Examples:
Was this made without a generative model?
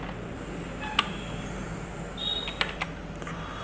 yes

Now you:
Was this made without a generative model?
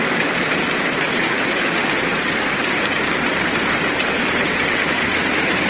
no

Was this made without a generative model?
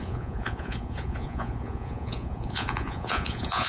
no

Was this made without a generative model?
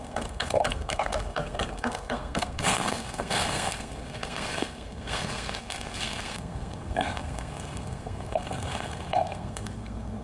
no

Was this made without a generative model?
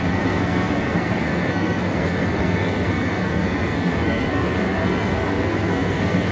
no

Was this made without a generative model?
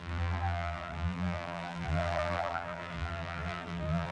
no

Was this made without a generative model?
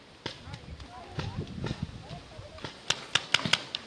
yes